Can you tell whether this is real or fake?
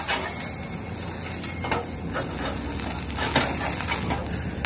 real